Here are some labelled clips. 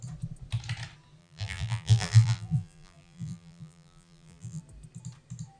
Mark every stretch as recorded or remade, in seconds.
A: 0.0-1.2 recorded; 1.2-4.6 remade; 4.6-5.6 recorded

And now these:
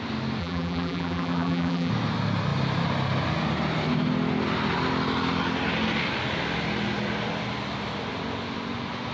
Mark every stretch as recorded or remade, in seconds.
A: 0.0-0.4 recorded; 0.4-1.9 remade; 1.9-9.1 recorded